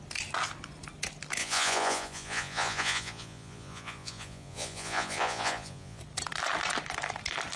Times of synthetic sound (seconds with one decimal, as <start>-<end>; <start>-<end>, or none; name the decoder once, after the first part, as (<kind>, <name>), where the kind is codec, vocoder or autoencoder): 1.4-6.0 (vocoder, Vocos)